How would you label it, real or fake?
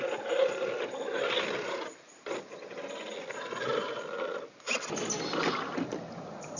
real